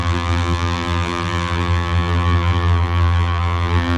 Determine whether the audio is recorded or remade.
remade